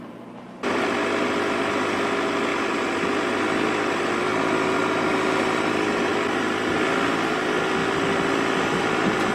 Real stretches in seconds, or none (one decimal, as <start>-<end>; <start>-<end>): 0.0-2.5; 4.2-9.3